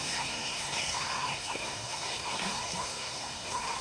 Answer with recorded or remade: remade